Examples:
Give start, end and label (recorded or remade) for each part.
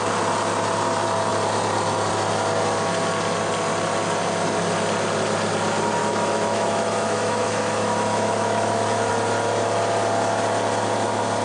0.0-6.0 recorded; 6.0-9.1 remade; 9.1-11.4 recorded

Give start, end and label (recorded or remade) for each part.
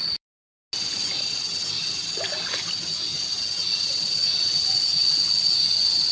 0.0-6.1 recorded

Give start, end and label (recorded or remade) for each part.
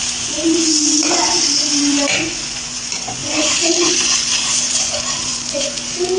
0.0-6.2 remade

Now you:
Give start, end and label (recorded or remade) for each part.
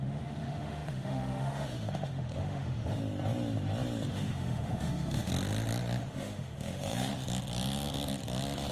0.0-3.0 remade; 3.0-4.1 recorded; 4.1-5.3 remade; 5.3-6.1 recorded; 6.1-7.1 remade; 7.1-8.7 recorded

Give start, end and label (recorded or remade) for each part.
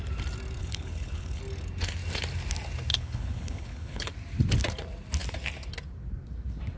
0.0-0.6 recorded; 0.6-1.4 remade; 1.4-2.9 recorded; 2.9-4.1 remade; 4.1-6.8 recorded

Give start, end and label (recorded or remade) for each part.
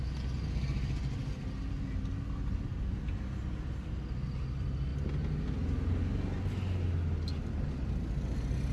0.0-8.7 recorded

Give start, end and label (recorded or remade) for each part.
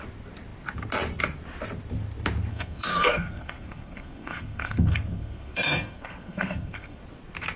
0.0-2.5 recorded; 2.5-7.0 remade; 7.0-7.6 recorded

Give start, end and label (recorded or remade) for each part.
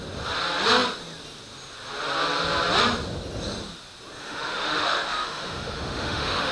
0.0-4.2 recorded; 4.2-6.5 remade